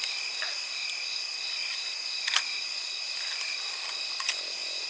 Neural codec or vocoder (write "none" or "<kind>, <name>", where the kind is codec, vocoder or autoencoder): none